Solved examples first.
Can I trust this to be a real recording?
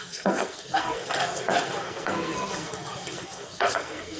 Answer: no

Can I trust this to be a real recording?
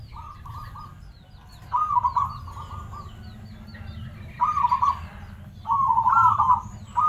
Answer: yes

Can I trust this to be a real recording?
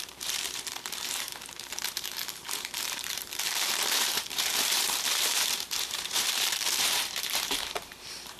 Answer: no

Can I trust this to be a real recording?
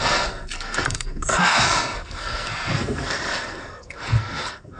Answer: no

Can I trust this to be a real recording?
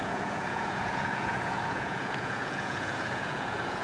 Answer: no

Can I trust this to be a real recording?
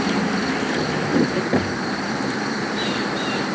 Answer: no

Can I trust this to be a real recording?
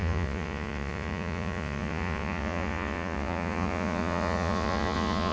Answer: no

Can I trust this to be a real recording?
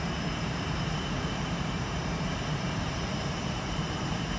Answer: no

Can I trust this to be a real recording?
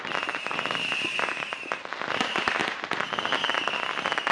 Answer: yes